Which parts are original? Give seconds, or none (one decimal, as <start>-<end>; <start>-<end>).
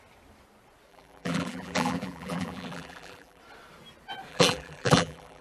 0.0-0.9; 3.4-4.3